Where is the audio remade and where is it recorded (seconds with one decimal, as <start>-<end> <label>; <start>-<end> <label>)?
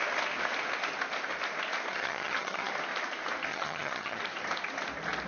0.0-1.9 recorded; 1.9-2.7 remade; 2.7-3.5 recorded; 3.5-4.2 remade; 4.2-5.3 recorded